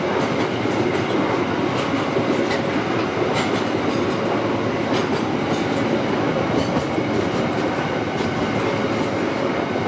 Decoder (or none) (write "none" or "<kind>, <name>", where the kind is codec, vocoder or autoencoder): none